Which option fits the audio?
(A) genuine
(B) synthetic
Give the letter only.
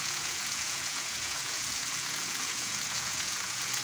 B